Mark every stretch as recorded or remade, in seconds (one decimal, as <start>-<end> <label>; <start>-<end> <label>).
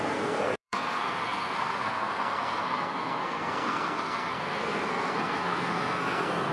0.0-6.5 remade